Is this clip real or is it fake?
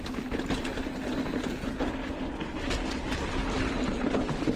real